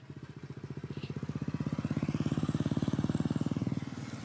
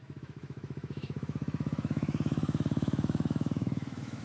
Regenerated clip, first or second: second